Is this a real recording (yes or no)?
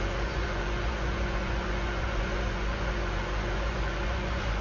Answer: no